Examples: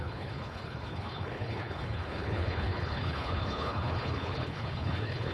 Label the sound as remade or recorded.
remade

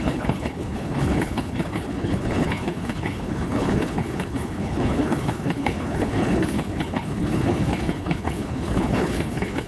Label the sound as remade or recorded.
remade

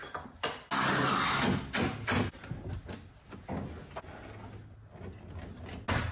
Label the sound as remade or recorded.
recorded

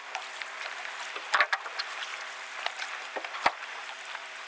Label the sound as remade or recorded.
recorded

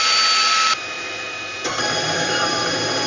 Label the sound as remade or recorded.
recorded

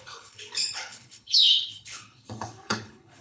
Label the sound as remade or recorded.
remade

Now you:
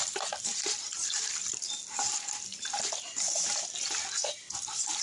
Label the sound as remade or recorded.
recorded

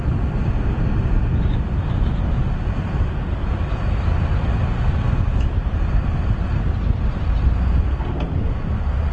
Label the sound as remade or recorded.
recorded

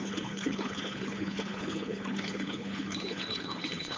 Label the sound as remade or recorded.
remade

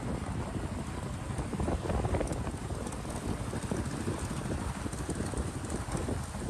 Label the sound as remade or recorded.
recorded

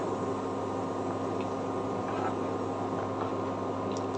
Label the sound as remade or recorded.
recorded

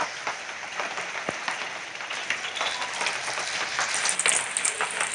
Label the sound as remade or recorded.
recorded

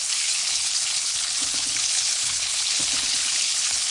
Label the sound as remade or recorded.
remade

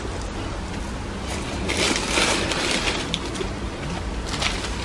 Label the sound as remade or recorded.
recorded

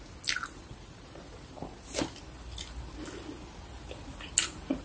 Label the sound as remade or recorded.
recorded